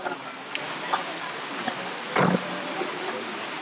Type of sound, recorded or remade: recorded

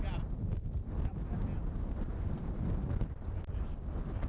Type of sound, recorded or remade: recorded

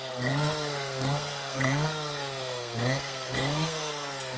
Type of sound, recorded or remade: remade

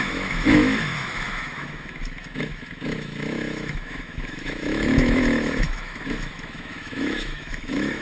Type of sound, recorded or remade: remade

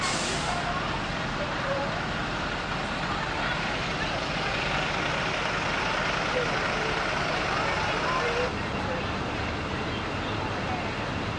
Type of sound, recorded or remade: recorded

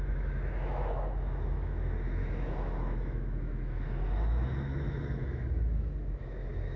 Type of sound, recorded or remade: remade